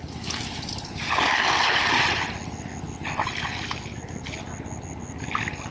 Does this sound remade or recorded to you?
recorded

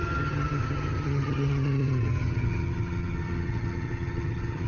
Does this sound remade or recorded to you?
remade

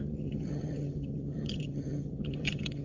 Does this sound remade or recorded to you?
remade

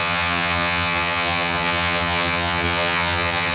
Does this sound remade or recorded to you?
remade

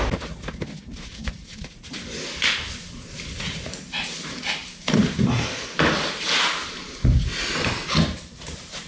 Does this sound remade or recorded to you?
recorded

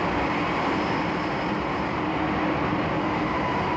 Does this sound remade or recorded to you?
recorded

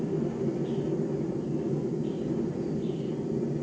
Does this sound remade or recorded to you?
recorded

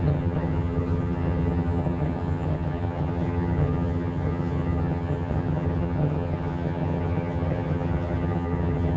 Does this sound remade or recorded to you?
remade